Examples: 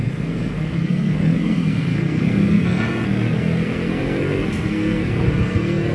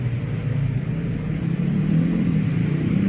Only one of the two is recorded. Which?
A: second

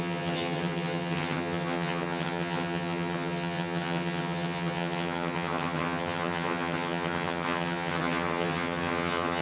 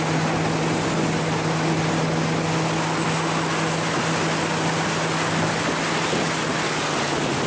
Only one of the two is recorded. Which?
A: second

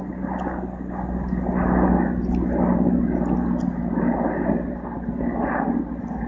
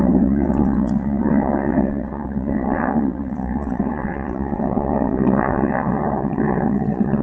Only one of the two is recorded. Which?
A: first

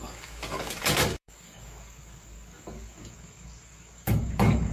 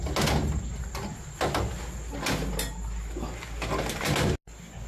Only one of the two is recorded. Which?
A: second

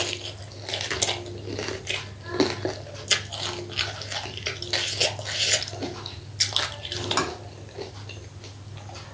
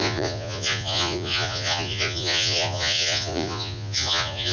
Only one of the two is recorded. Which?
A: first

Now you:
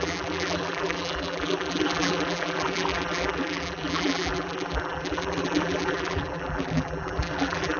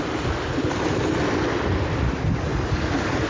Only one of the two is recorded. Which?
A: second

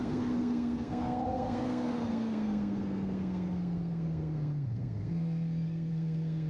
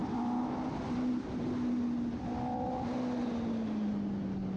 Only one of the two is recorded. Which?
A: second